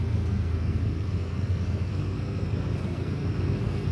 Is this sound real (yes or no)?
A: no